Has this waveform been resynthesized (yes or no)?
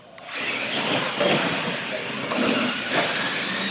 no